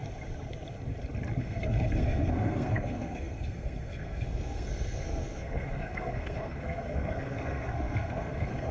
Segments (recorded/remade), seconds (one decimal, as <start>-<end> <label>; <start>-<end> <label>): 0.0-1.4 recorded; 1.4-8.7 remade